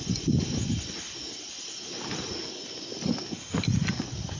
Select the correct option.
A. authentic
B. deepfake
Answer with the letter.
A